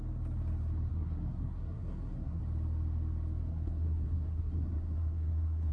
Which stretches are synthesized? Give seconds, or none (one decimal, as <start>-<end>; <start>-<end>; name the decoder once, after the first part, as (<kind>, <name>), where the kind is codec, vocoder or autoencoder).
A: 0.9-2.4 (codec, SNAC); 3.5-5.7